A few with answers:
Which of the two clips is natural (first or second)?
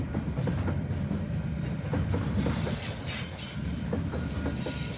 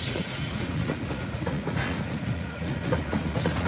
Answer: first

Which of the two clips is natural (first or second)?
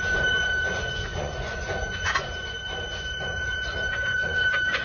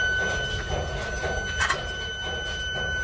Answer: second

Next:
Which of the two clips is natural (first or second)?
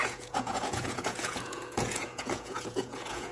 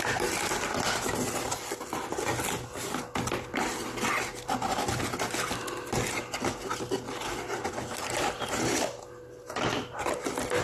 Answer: second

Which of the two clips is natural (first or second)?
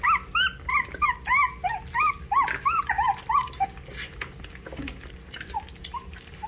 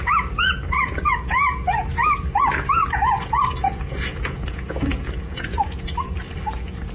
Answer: first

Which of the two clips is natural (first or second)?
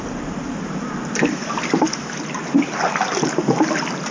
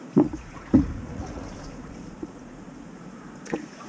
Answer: first